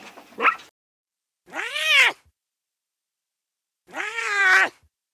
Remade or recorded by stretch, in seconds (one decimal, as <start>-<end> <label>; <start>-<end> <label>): 0.0-1.7 recorded; 1.7-5.1 remade

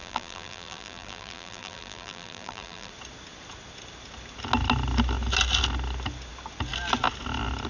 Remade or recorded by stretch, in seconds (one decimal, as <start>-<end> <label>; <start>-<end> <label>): 0.0-2.9 remade; 2.9-7.7 recorded

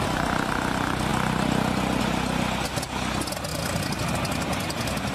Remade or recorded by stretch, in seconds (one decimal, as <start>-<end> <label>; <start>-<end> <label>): 0.0-5.1 recorded